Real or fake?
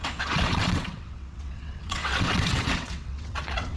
fake